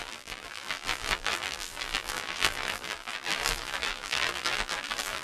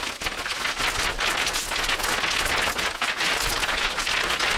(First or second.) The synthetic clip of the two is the first